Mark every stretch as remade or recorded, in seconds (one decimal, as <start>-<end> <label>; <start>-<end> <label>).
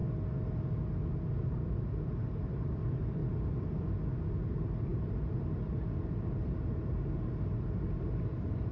0.0-1.5 recorded; 1.5-3.2 remade; 3.2-4.2 recorded; 4.2-8.7 remade